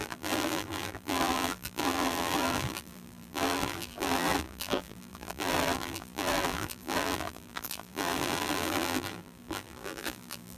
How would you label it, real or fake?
fake